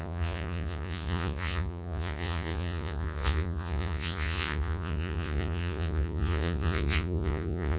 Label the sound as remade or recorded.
remade